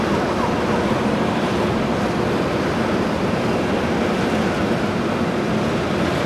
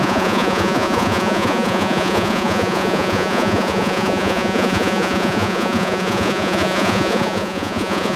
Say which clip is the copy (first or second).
second